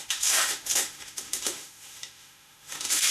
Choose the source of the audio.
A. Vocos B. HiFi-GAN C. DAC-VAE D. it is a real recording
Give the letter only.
C